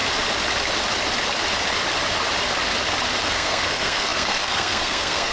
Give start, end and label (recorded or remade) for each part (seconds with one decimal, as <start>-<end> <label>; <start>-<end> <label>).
0.0-3.2 recorded; 3.2-5.3 remade